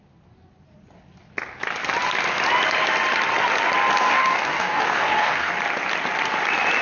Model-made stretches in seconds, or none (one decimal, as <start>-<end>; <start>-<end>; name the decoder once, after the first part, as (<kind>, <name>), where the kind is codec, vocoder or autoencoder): 4.0-5.5 (codec, DAC)